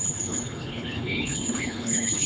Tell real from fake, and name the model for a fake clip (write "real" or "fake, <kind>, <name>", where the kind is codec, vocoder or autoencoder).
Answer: fake, codec, HILCodec